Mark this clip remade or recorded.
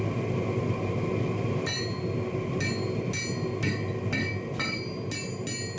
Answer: recorded